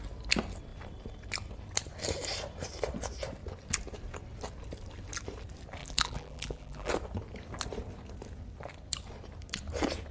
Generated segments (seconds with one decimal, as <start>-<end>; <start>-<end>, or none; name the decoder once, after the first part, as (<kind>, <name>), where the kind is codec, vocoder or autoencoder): 5.8-6.9 (vocoder, BigVGAN v2)